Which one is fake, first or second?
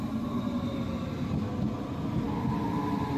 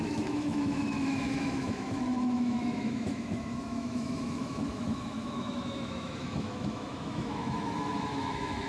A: second